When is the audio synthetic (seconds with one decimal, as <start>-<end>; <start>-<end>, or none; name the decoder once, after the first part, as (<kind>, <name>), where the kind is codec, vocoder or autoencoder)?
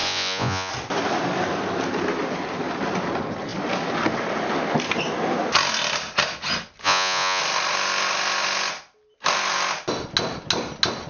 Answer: 0.0-0.7 (vocoder, Vocos); 6.8-7.4